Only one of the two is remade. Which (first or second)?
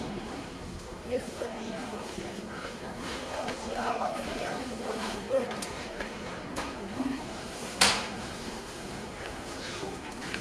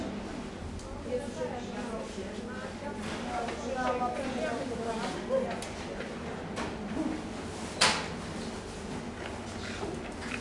first